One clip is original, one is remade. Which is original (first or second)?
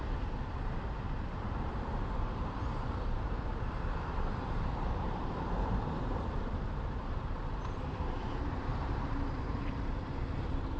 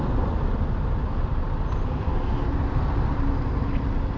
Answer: second